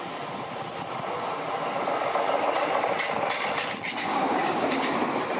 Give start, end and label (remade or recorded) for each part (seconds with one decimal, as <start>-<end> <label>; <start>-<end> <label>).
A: 0.0-4.1 recorded; 4.1-4.8 remade; 4.8-5.4 recorded